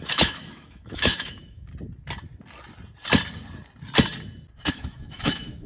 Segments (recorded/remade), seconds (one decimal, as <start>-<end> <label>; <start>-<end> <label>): 0.0-1.7 remade; 1.7-4.7 recorded; 4.7-5.7 remade